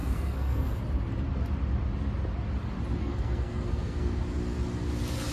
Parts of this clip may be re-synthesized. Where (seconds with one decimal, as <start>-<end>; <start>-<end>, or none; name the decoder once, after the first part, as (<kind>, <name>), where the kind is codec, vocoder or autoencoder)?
0.0-0.8 (codec, SNAC); 3.0-4.2